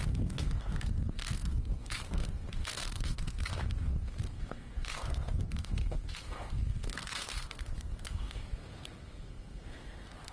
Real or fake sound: fake